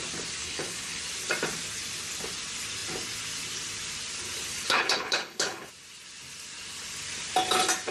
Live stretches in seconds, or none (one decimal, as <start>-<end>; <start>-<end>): 0.0-0.4; 1.0-4.5; 5.7-7.9